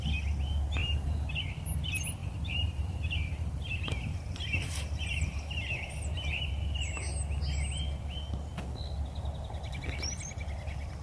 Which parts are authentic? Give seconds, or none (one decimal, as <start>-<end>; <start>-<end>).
0.0-0.8; 1.3-2.2; 6.5-11.0